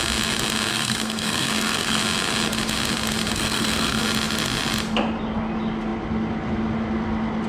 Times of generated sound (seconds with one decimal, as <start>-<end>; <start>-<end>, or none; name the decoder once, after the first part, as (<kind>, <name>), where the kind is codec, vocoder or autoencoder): 0.7-2.0 (codec, SNAC); 3.3-4.0

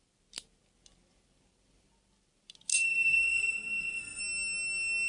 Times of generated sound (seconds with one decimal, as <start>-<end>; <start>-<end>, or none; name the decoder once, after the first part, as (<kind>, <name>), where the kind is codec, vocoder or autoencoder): 2.7-4.2 (codec, SNAC)

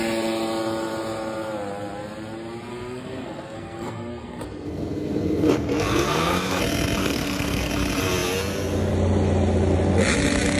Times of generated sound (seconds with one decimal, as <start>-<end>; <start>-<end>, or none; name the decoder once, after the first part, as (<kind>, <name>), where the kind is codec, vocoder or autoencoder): 2.7-6.6 (codec, SNAC); 7.0-7.7

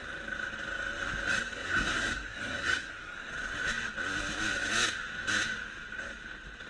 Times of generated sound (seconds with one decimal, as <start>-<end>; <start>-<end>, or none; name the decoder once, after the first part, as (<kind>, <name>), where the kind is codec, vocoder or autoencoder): 1.3-3.3 (codec, SNAC)